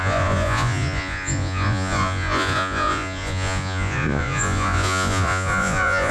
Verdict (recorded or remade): remade